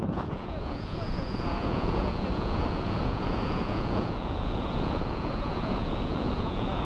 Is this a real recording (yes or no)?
no